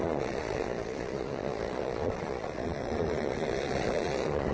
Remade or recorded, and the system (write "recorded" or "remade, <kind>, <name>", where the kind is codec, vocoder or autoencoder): remade, vocoder, Vocos